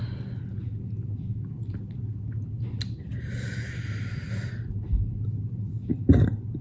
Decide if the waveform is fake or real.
real